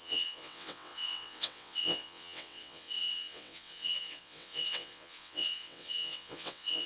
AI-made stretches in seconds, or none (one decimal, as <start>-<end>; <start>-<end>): 0.0-6.9